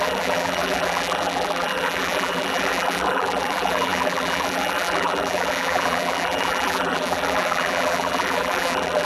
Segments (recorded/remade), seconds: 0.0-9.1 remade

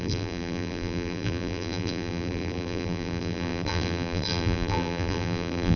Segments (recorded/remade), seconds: 0.0-5.8 remade

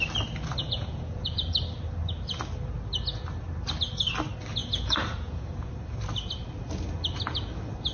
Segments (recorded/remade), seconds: 0.0-0.6 recorded; 0.6-1.5 remade; 1.5-4.6 recorded; 4.6-5.7 remade; 5.7-7.9 recorded

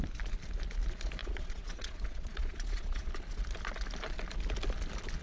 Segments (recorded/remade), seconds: 0.0-1.2 recorded; 1.2-3.1 remade; 3.1-5.2 recorded